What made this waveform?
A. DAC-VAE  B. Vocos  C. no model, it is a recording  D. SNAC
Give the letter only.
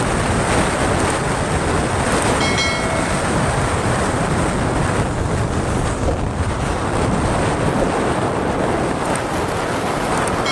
C